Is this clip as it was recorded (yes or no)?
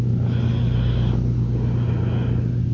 yes